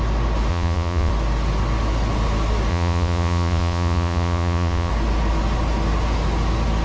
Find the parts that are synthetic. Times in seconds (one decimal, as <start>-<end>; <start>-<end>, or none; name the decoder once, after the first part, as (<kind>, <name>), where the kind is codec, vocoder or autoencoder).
0.5-1.1 (vocoder, Vocos); 2.7-4.9

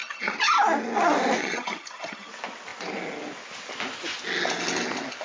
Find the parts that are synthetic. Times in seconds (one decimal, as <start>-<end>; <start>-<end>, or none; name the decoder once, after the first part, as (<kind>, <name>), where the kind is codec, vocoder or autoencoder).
0.0-0.5 (vocoder, HiFi-GAN); 1.4-2.3

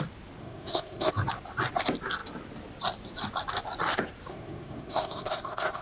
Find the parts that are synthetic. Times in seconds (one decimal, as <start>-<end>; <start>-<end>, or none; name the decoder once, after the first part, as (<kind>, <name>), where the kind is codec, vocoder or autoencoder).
0.4-1.1 (codec, SNAC); 4.3-5.8

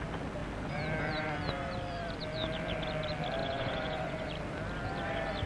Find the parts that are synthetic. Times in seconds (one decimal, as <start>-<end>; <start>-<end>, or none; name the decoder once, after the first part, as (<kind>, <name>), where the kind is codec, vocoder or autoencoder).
3.4-4.3 (vocoder, Vocos)

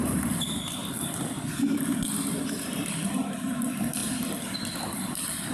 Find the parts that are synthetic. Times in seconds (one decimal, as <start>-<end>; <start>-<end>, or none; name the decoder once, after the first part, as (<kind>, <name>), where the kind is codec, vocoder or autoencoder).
0.0-0.8 (vocoder, BigVGAN v2); 2.5-4.0

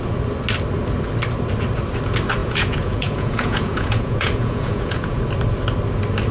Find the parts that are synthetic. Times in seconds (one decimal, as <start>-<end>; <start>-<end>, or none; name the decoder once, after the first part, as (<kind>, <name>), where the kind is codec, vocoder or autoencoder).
2.4-5.2 (vocoder, Vocos)

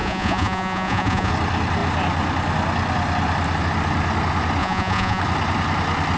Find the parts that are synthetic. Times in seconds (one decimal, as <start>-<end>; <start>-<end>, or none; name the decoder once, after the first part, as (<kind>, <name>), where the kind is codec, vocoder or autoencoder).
0.0-1.3 (vocoder, Vocos); 4.6-5.2

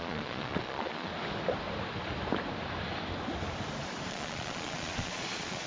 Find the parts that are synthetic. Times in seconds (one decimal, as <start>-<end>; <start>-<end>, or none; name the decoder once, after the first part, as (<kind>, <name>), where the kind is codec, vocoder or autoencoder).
0.0-1.1 (vocoder, Vocos); 4.1-5.7